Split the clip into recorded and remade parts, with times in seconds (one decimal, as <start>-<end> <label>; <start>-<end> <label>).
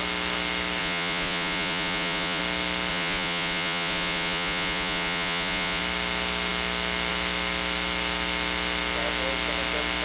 0.0-0.8 recorded; 0.8-2.4 remade; 2.4-2.9 recorded; 2.9-5.8 remade; 5.8-10.0 recorded